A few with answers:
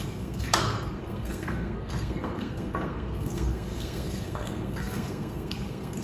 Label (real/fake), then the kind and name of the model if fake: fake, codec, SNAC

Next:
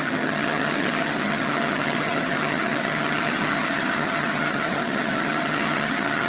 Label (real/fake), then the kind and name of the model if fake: fake, vocoder, HiFi-GAN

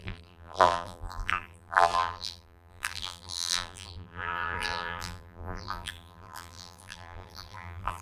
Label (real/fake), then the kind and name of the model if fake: fake, vocoder, BigVGAN v2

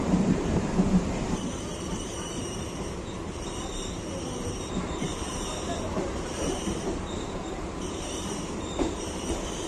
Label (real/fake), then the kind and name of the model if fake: fake, vocoder, BigVGAN v2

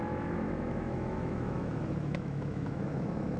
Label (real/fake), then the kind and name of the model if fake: fake, autoencoder, DAC-VAE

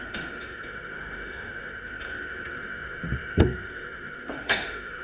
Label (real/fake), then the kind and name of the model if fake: fake, autoencoder, DAC-VAE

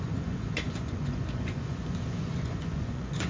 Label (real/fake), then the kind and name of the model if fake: fake, vocoder, Vocos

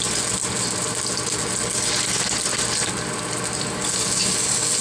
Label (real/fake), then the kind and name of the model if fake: real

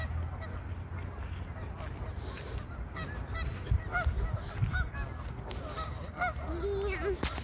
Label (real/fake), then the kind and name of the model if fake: real